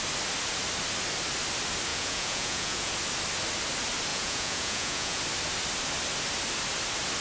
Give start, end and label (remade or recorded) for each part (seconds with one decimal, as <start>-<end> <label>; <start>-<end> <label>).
0.0-1.9 recorded; 1.9-2.9 remade; 2.9-4.1 recorded; 4.1-5.2 remade; 5.2-7.2 recorded